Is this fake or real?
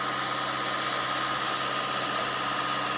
real